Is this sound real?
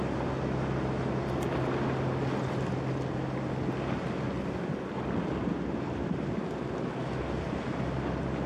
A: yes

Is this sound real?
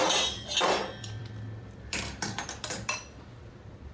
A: no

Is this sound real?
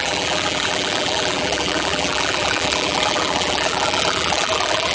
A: no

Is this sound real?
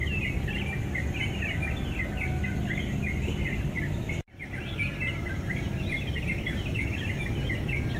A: yes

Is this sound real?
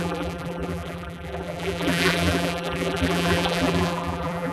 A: no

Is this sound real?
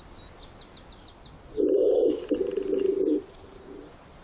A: yes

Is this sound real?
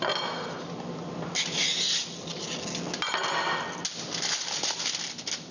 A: yes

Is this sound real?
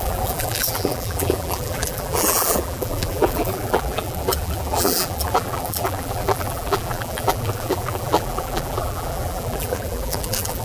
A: no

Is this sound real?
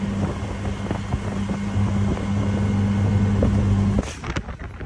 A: yes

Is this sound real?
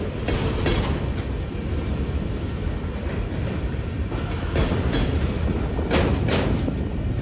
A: no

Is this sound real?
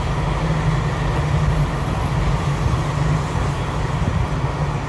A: yes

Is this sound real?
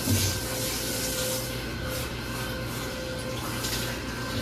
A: yes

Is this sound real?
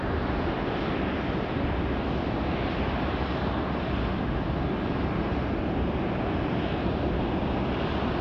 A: yes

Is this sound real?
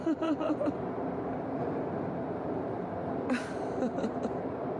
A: no